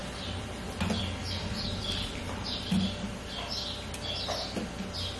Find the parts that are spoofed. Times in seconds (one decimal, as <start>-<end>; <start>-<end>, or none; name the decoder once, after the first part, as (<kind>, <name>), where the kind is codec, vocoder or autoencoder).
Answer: 0.0-3.1 (vocoder, BigVGAN v2)